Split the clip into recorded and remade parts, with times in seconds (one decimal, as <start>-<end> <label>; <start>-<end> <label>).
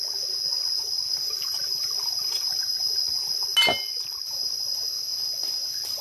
0.0-1.5 recorded; 1.5-3.0 remade; 3.0-6.0 recorded